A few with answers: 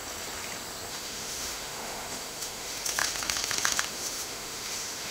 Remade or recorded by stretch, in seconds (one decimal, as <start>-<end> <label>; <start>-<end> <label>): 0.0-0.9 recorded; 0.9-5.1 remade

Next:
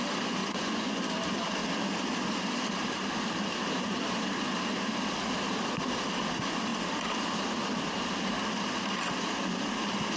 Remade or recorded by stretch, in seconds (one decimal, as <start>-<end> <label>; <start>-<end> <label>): 0.0-0.4 recorded; 0.4-1.0 remade; 1.0-10.2 recorded

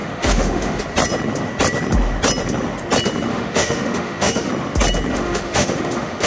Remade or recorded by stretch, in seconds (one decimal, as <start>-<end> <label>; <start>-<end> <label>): 0.0-0.8 remade; 0.8-3.3 recorded; 3.3-4.5 remade; 4.5-5.1 recorded; 5.1-6.3 remade

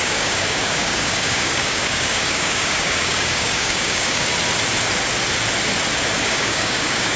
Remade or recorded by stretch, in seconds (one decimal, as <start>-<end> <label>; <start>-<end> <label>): 0.0-4.3 remade; 4.3-6.2 recorded; 6.2-7.2 remade

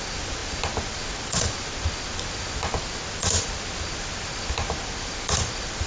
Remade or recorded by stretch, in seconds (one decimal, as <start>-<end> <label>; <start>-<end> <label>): 0.0-5.9 recorded

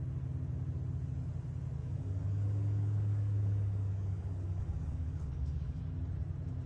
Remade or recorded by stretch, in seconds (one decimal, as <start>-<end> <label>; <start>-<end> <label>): 0.0-1.8 recorded; 1.8-5.8 remade; 5.8-6.7 recorded

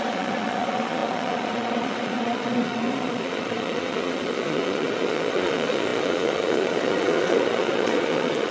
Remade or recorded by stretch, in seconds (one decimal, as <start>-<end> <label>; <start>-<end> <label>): 0.0-8.5 remade